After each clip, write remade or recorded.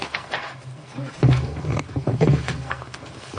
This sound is remade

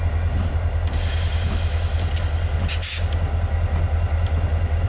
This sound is recorded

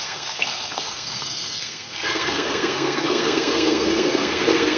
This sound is remade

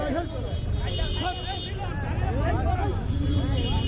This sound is recorded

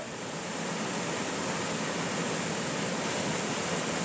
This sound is recorded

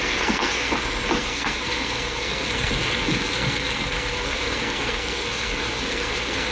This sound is remade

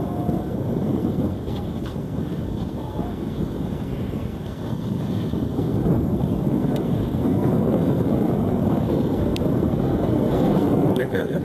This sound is remade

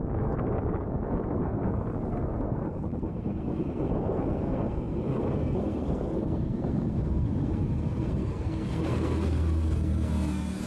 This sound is remade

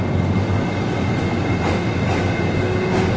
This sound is recorded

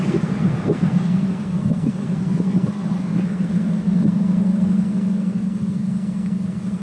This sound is remade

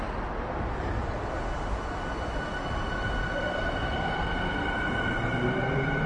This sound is recorded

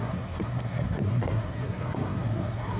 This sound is remade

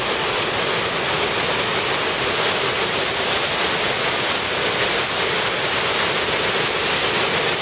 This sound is recorded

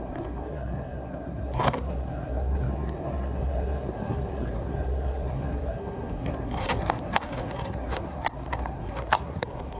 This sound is remade